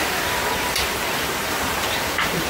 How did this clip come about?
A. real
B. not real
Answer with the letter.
B